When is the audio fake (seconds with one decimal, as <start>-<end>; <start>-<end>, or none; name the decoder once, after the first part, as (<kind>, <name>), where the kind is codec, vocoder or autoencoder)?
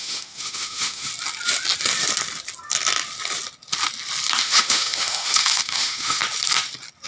0.0-1.1 (autoencoder, DAC-VAE); 4.4-6.2